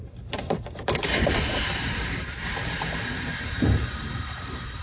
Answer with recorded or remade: remade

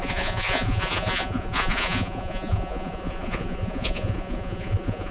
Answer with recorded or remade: remade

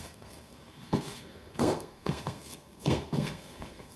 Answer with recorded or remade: remade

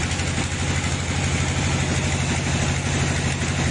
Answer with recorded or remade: recorded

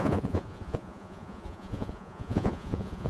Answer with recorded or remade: remade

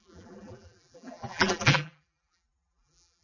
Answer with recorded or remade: remade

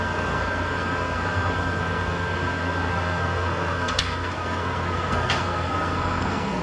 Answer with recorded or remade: remade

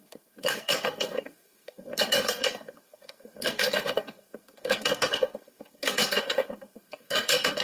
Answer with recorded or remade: remade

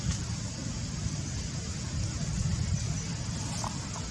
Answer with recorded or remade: recorded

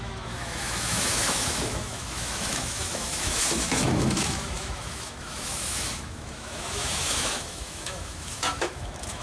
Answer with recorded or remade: remade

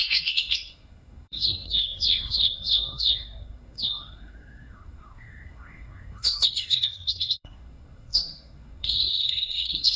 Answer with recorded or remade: remade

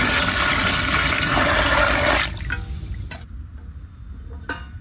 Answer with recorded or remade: recorded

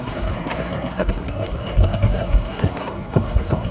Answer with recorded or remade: remade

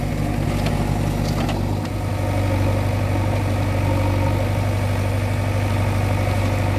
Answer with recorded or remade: recorded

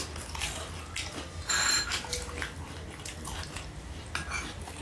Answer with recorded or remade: recorded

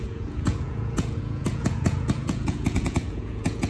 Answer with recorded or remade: remade